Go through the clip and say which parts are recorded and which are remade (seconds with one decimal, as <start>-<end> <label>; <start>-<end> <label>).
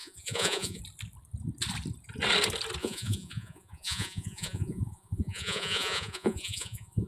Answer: 0.0-0.8 remade; 0.8-2.8 recorded; 2.8-7.1 remade